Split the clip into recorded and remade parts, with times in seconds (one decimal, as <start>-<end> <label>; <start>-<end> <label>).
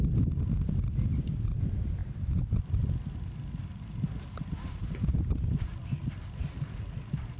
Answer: 0.0-7.4 recorded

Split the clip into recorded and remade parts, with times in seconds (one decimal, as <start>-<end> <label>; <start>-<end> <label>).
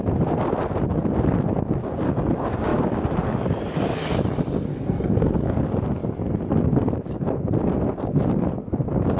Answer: 0.0-4.7 recorded; 4.7-5.6 remade; 5.6-9.2 recorded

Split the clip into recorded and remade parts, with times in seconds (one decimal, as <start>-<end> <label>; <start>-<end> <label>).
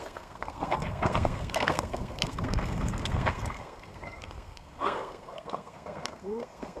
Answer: 0.0-6.8 remade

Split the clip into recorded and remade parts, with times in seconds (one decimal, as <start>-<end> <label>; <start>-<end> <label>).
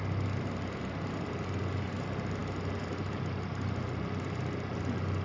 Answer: 0.0-5.2 recorded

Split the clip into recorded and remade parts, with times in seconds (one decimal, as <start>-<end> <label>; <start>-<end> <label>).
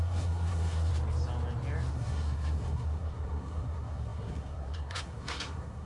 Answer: 0.0-0.9 remade; 0.9-1.9 recorded; 1.9-5.9 remade